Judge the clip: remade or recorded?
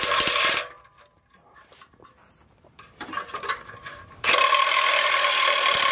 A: remade